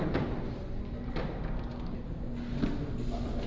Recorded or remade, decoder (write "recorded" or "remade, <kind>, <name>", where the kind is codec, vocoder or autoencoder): recorded